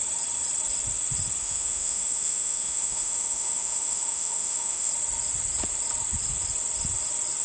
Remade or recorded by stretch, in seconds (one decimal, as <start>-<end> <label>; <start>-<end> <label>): 0.0-1.4 recorded; 1.4-4.9 remade; 4.9-7.4 recorded